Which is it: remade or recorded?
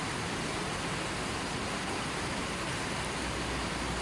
recorded